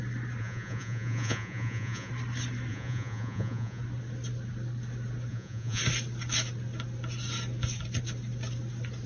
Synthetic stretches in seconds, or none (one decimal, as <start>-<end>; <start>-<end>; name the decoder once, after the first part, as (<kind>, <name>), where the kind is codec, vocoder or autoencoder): 0.4-2.1 (vocoder, Vocos); 2.7-3.8; 5.3-5.8